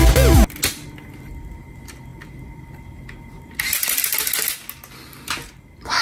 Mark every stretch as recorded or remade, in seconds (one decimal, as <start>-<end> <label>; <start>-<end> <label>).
0.0-6.0 recorded

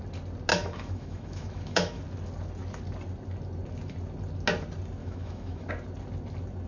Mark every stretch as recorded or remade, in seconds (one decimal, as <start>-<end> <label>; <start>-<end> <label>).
0.0-0.5 recorded; 0.5-2.0 remade; 2.0-5.0 recorded; 5.0-5.7 remade; 5.7-6.7 recorded

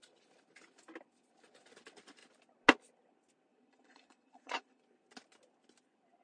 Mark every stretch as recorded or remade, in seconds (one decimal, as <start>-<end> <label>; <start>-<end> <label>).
0.0-3.5 recorded; 3.5-4.8 remade; 4.8-6.2 recorded

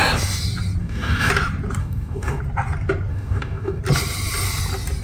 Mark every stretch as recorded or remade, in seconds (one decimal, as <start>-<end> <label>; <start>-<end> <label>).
0.0-0.8 recorded; 0.8-1.3 remade; 1.3-1.8 recorded; 1.8-2.4 remade; 2.4-3.1 recorded; 3.1-3.8 remade; 3.8-5.0 recorded

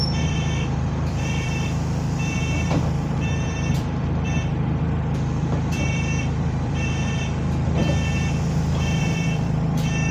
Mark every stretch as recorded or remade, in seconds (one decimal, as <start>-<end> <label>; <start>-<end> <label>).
0.0-7.8 remade; 7.8-9.0 recorded; 9.0-10.1 remade

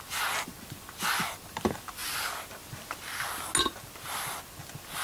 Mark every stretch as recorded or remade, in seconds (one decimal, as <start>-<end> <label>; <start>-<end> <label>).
0.0-5.0 recorded

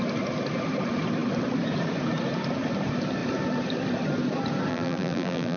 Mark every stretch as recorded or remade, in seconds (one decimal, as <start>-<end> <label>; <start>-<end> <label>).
0.0-4.7 recorded; 4.7-5.6 remade